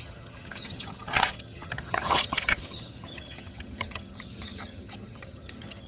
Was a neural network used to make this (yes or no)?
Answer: yes